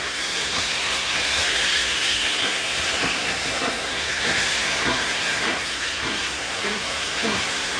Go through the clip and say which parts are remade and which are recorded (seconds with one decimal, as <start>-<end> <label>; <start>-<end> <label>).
0.0-7.8 remade